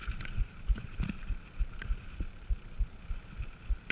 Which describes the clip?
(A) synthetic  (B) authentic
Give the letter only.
B